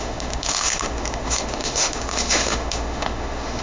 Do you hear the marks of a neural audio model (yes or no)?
yes